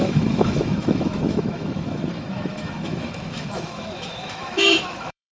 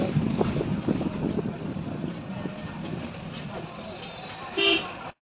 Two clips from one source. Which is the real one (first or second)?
second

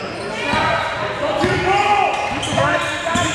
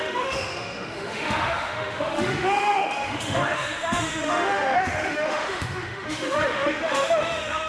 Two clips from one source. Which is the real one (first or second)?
first